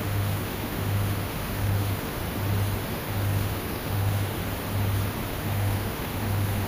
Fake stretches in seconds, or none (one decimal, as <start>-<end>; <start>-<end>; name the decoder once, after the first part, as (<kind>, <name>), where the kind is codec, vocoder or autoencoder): 0.0-2.2 (autoencoder, DAC-VAE); 2.9-4.4; 5.3-6.7